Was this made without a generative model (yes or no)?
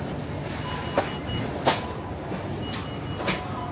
yes